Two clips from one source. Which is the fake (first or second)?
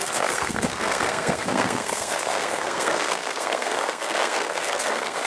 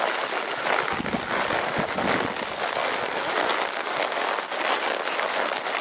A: first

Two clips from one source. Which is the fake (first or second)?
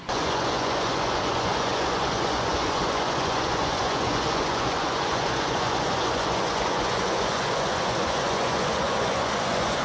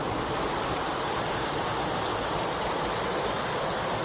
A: first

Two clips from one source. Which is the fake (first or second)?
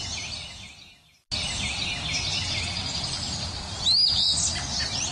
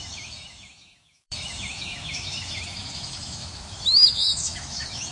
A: second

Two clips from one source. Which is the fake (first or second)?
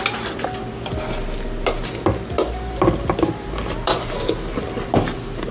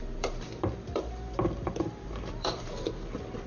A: second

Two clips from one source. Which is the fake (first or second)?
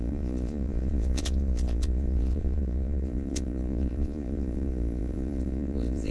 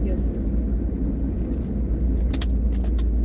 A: first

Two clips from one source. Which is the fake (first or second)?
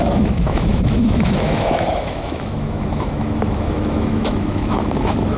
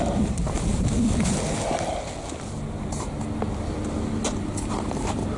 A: first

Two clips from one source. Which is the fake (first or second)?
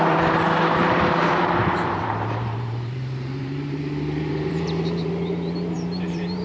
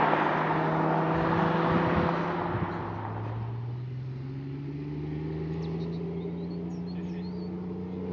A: first